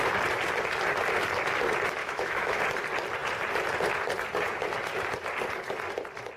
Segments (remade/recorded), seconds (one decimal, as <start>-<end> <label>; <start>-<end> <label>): 0.0-2.0 recorded; 2.0-2.6 remade; 2.6-6.4 recorded